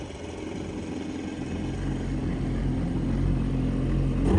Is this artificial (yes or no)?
no